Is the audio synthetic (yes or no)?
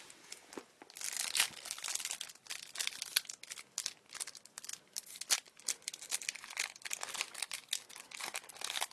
no